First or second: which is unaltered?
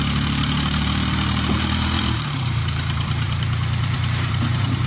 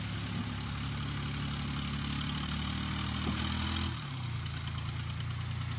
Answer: second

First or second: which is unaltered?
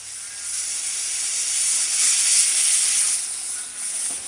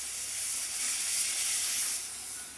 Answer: first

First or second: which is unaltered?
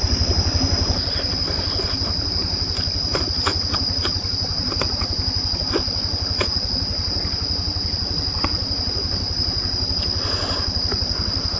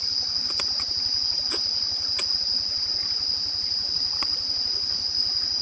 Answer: second